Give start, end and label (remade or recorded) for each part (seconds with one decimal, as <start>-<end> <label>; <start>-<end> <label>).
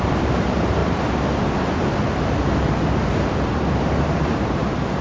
0.0-0.8 remade; 0.8-3.8 recorded; 3.8-5.0 remade